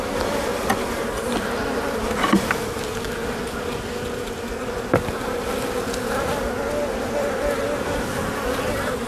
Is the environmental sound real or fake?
real